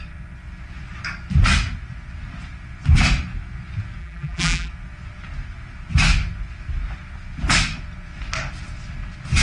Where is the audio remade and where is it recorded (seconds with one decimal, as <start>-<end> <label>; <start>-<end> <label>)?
0.0-4.0 recorded; 4.0-4.7 remade; 4.7-9.4 recorded